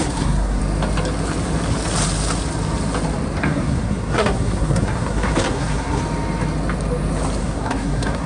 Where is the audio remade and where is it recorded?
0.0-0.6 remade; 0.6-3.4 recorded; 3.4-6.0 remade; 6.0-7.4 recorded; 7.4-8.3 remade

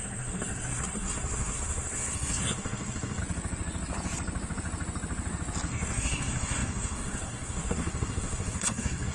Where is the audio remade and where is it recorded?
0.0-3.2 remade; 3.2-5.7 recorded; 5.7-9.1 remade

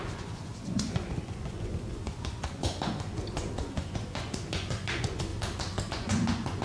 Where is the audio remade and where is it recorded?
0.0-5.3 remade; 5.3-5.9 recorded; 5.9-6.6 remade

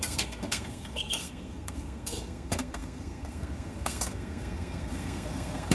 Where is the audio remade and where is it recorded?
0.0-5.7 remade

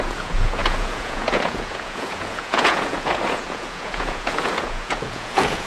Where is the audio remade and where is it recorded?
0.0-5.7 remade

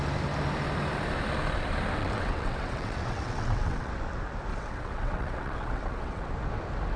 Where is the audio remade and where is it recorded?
0.0-2.0 recorded; 2.0-3.9 remade; 3.9-4.5 recorded; 4.5-6.3 remade; 6.3-7.0 recorded

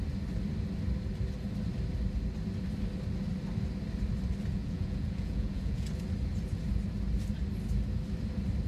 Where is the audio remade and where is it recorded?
0.0-4.5 recorded; 4.5-5.9 remade; 5.9-8.7 recorded

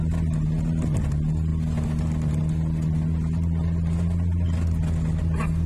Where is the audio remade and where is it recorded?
0.0-5.7 recorded